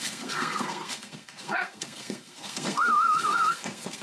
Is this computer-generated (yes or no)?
yes